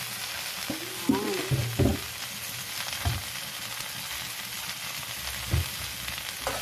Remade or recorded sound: recorded